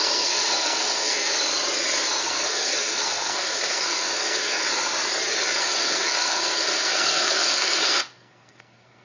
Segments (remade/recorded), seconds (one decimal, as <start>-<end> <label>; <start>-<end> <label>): 0.0-1.3 remade; 1.3-2.2 recorded; 2.2-4.6 remade; 4.6-5.6 recorded; 5.6-9.0 remade